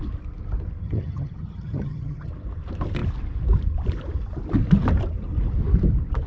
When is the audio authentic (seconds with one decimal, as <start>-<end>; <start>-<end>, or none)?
0.0-0.8; 2.3-6.3